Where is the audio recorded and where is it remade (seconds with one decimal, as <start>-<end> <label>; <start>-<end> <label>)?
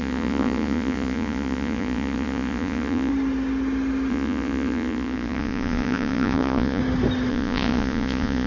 0.0-3.1 remade; 3.1-4.1 recorded; 4.1-6.8 remade; 6.8-7.3 recorded; 7.3-8.5 remade